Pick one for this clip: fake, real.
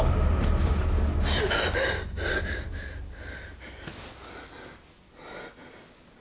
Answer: real